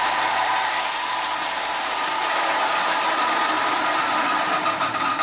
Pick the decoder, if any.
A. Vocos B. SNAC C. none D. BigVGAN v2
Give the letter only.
C